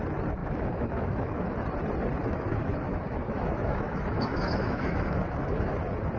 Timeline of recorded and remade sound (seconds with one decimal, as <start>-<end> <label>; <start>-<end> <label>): 0.0-0.4 recorded; 0.4-1.5 remade; 1.5-2.2 recorded; 2.2-5.7 remade; 5.7-6.2 recorded